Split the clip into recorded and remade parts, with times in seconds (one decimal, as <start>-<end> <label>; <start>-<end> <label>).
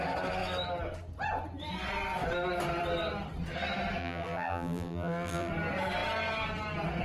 0.0-4.0 recorded; 4.0-5.5 remade; 5.5-7.0 recorded